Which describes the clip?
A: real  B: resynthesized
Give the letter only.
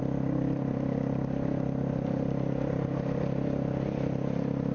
A